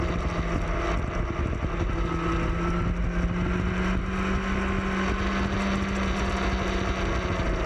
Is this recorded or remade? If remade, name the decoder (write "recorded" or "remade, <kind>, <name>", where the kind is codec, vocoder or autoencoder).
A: recorded